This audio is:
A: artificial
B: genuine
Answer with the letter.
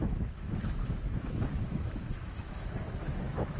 A